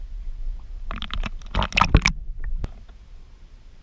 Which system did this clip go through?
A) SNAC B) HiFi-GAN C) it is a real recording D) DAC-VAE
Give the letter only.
C